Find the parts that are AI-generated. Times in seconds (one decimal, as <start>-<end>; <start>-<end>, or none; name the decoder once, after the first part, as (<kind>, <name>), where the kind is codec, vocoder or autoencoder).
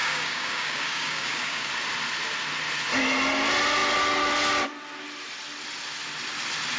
0.0-1.7 (codec, DAC)